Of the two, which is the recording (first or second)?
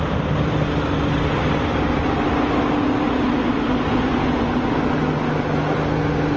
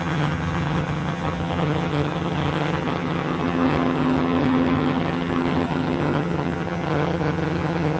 first